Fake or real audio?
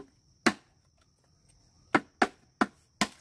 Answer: real